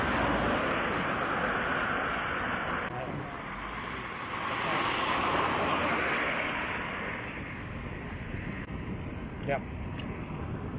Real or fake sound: real